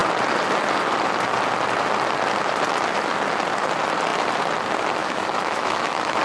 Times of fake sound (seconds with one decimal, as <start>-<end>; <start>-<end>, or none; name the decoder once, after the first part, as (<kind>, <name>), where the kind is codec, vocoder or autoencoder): 5.0-6.2 (autoencoder, DAC-VAE)